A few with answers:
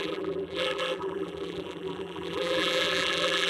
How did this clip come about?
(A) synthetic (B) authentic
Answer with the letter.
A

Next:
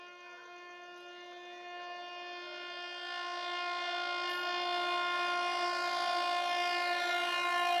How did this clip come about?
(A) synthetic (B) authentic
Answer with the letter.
B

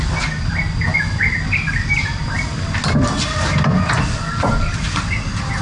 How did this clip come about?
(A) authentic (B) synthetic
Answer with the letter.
A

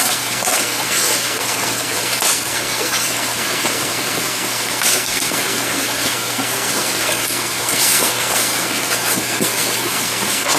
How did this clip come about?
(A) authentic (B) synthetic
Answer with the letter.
B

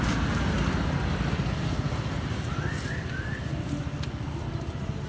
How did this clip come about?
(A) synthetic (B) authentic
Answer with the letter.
B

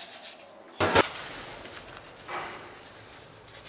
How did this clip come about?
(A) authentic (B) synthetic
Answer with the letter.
A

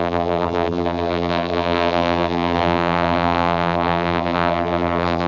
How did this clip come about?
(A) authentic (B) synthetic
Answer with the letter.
B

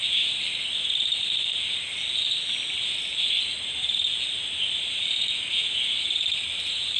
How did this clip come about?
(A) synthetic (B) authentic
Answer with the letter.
A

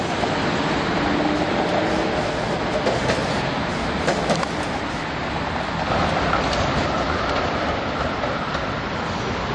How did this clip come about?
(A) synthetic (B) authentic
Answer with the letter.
B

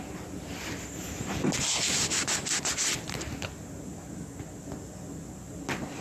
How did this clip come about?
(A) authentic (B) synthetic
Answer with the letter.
A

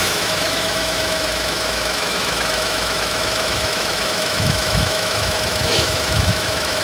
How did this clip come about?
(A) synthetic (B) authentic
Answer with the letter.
A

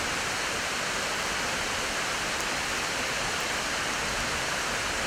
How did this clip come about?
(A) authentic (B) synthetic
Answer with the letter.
A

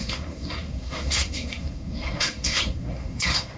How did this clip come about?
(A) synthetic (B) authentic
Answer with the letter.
A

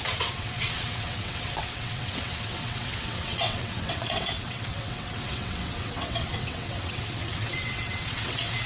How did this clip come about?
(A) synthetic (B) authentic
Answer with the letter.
A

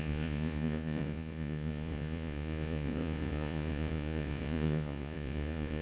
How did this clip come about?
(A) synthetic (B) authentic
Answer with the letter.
A